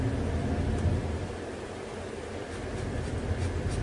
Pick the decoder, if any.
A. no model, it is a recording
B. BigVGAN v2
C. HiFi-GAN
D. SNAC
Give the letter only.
A